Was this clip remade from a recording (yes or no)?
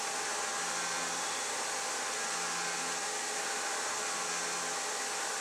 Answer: no